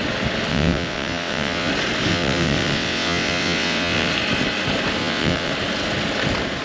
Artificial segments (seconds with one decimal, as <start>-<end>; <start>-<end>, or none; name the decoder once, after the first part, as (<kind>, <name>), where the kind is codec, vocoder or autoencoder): 0.5-1.7 (vocoder, WaveNeXt); 2.1-4.1; 5.0-5.5